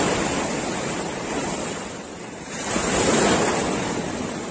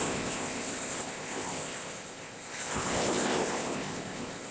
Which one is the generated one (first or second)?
second